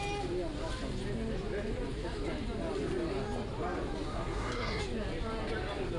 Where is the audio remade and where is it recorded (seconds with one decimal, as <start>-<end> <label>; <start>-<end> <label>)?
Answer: 0.0-4.1 recorded; 4.1-4.8 remade; 4.8-6.0 recorded